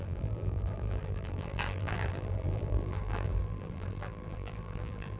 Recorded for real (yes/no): no